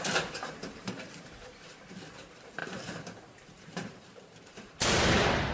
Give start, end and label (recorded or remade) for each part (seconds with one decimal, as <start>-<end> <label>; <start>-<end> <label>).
0.0-5.5 remade

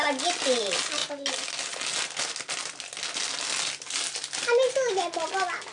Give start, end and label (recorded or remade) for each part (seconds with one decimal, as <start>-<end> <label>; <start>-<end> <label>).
0.0-5.7 recorded

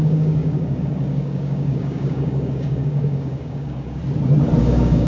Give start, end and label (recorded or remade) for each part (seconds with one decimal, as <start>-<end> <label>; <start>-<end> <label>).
0.0-4.0 remade; 4.0-4.6 recorded; 4.6-5.1 remade

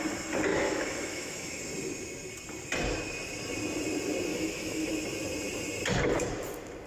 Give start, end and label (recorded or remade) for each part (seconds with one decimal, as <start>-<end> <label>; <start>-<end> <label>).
0.0-0.5 recorded; 0.5-1.6 remade; 1.6-4.3 recorded; 4.3-4.9 remade; 4.9-6.9 recorded